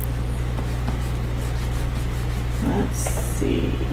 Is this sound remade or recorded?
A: recorded